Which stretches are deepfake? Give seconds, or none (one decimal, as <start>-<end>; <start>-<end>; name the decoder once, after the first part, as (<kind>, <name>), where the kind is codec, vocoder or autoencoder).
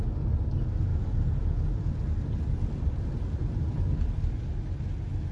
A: 0.9-2.0 (vocoder, Vocos)